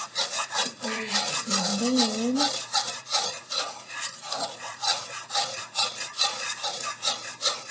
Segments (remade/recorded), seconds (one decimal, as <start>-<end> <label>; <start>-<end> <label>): 0.0-1.7 remade; 1.7-2.7 recorded; 2.7-7.7 remade